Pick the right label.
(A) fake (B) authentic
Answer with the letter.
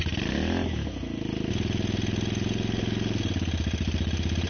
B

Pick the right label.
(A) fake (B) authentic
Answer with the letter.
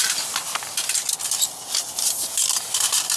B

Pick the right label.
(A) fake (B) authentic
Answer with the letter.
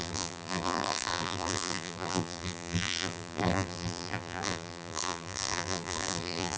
A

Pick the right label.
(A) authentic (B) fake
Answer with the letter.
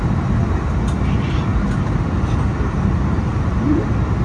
A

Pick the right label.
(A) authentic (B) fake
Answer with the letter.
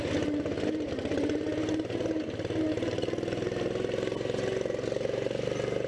A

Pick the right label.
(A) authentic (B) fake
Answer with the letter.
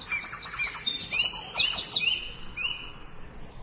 A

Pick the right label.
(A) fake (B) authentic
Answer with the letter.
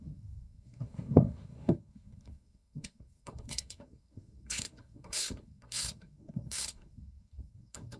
A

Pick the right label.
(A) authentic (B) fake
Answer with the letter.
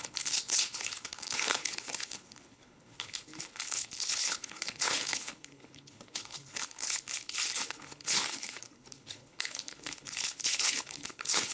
B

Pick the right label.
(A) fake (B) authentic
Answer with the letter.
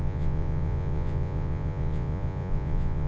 A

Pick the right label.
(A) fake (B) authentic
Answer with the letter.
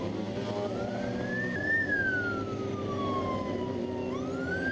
B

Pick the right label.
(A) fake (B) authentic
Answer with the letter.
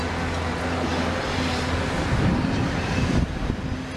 B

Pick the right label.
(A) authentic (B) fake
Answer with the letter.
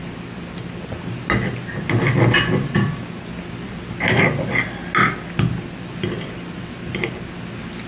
A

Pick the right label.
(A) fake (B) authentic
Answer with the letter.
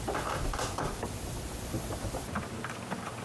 A